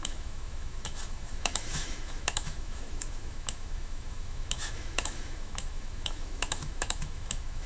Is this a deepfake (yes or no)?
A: yes